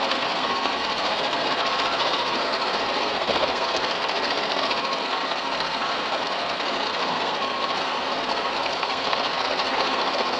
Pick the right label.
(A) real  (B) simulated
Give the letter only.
B